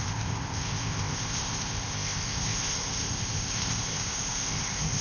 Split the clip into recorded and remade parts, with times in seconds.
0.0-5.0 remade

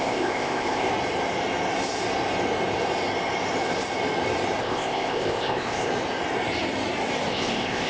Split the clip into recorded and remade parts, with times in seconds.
0.0-0.9 remade; 0.9-4.6 recorded; 4.6-5.9 remade; 5.9-7.3 recorded; 7.3-7.9 remade

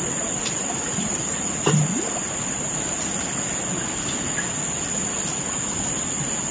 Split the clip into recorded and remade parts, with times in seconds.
0.0-6.5 recorded

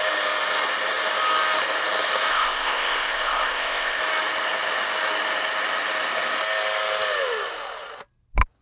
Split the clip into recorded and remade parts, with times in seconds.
0.0-2.3 recorded; 2.3-4.0 remade; 4.0-8.6 recorded

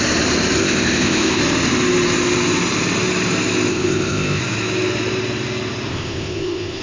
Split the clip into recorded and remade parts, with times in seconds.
0.0-0.6 recorded; 0.6-1.4 remade; 1.4-3.7 recorded; 3.7-4.4 remade; 4.4-5.9 recorded; 5.9-6.8 remade